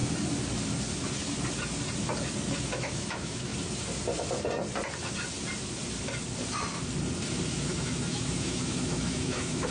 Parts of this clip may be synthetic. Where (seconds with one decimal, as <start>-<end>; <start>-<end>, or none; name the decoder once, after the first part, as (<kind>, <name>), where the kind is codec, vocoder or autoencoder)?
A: 2.6-3.5 (autoencoder, DAC-VAE); 7.5-9.7